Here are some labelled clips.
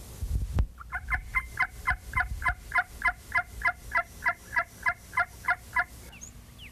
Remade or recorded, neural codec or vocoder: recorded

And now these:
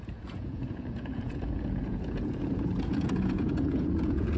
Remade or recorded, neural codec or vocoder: remade, vocoder, Vocos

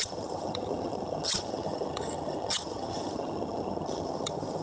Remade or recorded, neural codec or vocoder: remade, vocoder, HiFi-GAN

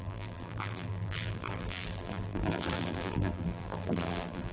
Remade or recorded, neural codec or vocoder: remade, vocoder, BigVGAN v2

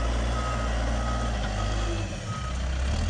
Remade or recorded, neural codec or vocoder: recorded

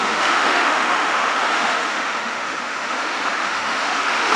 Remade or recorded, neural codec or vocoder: remade, autoencoder, DAC-VAE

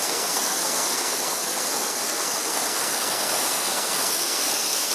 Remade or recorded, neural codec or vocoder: remade, codec, SNAC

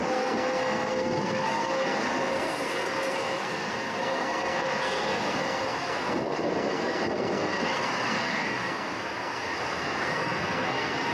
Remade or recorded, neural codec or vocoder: remade, codec, SNAC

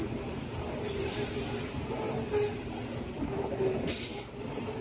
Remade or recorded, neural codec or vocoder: recorded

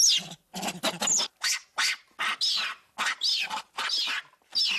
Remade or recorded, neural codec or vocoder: recorded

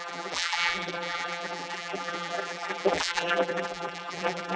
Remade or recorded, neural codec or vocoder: remade, vocoder, BigVGAN v2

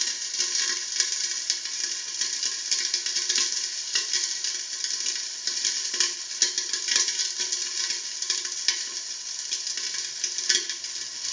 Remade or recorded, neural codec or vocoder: recorded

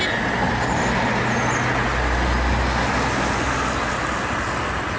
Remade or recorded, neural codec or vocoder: recorded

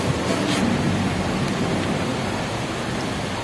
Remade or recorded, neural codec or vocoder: recorded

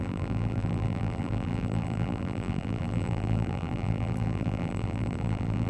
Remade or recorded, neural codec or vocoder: remade, vocoder, BigVGAN v2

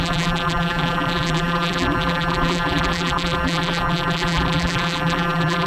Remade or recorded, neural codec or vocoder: remade, vocoder, BigVGAN v2